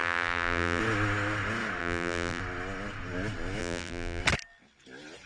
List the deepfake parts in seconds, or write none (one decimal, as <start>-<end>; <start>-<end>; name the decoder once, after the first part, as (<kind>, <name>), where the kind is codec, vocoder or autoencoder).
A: 0.0-0.8 (vocoder, BigVGAN v2); 1.8-2.4; 3.6-4.2